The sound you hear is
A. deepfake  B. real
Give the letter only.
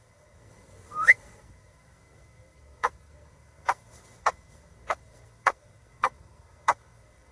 A